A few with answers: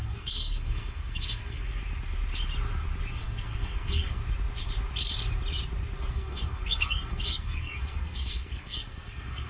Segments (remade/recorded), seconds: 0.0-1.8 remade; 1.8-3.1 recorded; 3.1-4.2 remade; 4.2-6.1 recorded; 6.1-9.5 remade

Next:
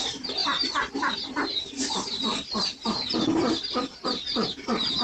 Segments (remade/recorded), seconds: 0.0-5.0 recorded

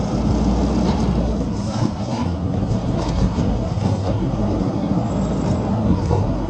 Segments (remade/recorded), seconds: 0.0-1.2 recorded; 1.2-5.1 remade; 5.1-5.7 recorded; 5.7-6.5 remade

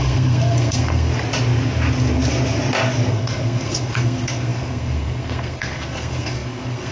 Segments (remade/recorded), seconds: 0.0-1.1 remade; 1.1-3.1 recorded; 3.1-6.9 remade

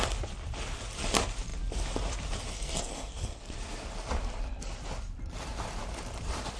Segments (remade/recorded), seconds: 0.0-2.5 recorded; 2.5-3.4 remade; 3.4-6.6 recorded

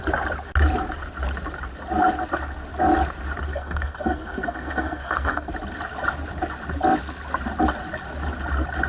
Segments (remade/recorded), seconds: 0.0-3.5 recorded; 3.5-5.5 remade; 5.5-8.9 recorded

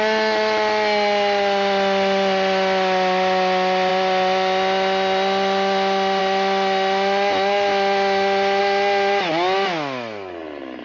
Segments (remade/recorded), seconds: 0.0-10.8 recorded